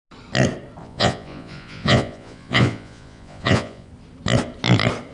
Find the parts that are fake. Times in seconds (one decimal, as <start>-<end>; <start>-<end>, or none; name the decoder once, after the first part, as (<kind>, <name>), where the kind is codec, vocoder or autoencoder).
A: 0.8-3.9 (vocoder, Vocos)